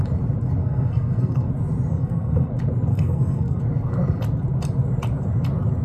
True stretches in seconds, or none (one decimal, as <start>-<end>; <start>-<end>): 0.0-0.6; 1.5-1.9; 2.5-2.9; 3.6-5.8